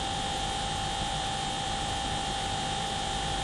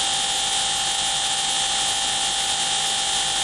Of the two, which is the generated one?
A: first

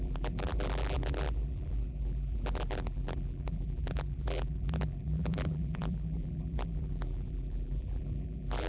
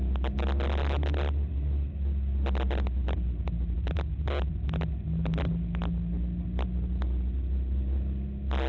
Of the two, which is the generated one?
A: first